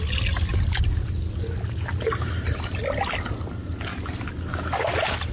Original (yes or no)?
yes